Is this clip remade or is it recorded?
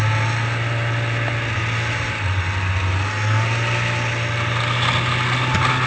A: recorded